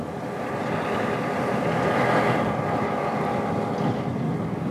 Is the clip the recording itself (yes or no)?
yes